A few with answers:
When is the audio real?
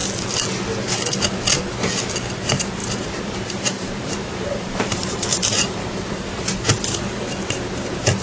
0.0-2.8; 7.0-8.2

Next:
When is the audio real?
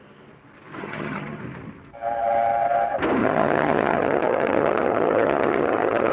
0.0-0.8; 1.4-3.2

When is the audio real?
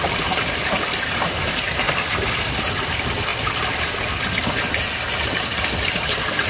0.0-6.5